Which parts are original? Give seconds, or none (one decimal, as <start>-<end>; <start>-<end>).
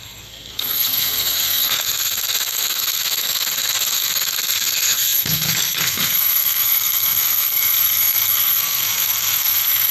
none